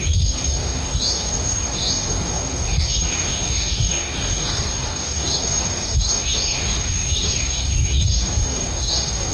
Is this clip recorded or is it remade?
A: remade